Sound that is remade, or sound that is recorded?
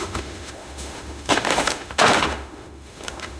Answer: remade